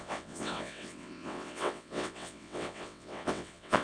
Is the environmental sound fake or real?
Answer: fake